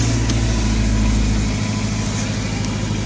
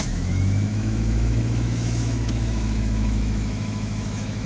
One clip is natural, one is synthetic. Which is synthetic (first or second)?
second